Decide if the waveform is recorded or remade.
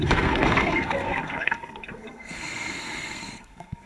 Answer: remade